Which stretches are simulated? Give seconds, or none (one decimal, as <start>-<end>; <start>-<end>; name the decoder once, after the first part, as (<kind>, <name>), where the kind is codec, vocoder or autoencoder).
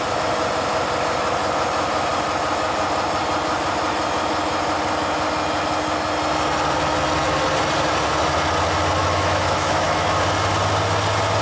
9.0-10.2 (autoencoder, DAC-VAE)